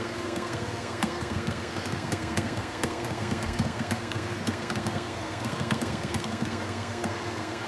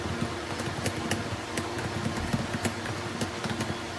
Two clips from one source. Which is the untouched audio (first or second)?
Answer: second